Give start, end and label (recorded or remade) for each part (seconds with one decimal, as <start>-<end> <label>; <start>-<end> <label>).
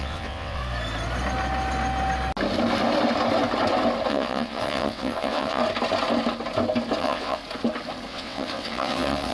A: 0.0-0.6 remade; 0.6-4.1 recorded; 4.1-5.6 remade; 5.6-7.0 recorded; 7.0-7.4 remade; 7.4-8.1 recorded; 8.1-9.3 remade